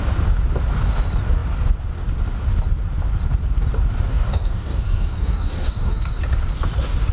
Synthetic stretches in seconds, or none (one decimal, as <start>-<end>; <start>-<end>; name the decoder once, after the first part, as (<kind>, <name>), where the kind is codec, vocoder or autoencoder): 4.1-6.2 (codec, DAC)